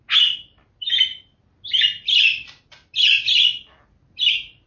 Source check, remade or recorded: recorded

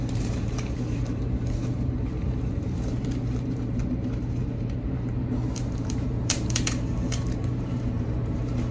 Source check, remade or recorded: remade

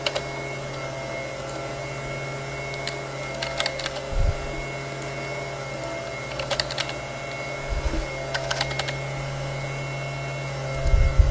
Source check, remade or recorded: recorded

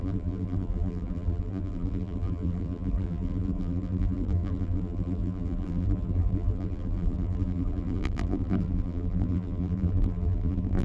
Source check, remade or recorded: remade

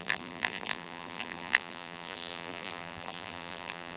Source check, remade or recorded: remade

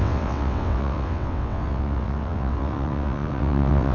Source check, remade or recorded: remade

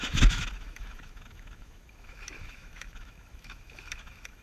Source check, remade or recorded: remade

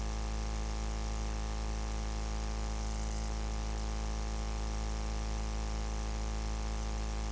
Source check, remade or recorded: recorded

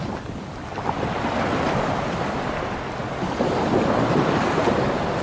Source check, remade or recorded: recorded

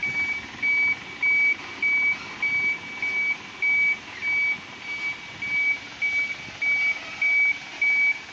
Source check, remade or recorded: recorded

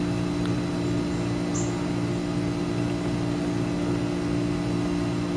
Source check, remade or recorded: recorded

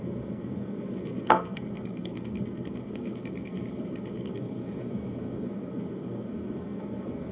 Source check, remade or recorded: remade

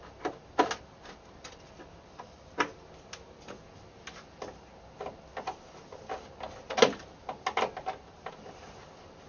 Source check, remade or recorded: recorded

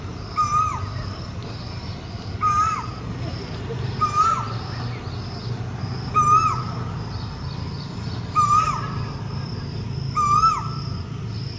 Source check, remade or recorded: recorded